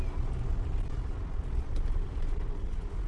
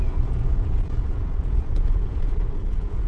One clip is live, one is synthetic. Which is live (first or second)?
first